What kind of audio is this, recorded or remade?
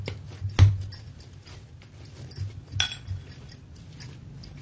recorded